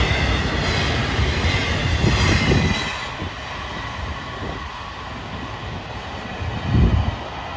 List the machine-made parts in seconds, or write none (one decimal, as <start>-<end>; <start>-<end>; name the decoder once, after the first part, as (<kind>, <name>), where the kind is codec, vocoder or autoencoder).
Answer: none